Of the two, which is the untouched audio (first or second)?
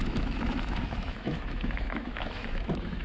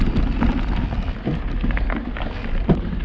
second